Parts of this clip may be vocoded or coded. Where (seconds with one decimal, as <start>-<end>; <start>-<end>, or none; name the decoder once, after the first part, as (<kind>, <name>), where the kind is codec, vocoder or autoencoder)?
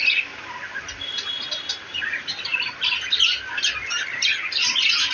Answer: none